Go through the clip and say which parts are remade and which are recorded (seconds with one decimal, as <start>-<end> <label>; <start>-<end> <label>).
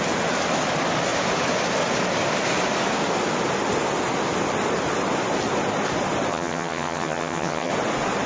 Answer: 0.0-6.3 recorded; 6.3-7.7 remade; 7.7-8.3 recorded